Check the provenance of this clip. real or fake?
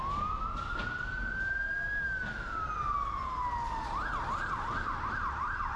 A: real